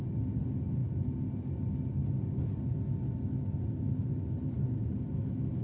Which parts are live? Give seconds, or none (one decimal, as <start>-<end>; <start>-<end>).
0.0-0.8; 1.3-5.6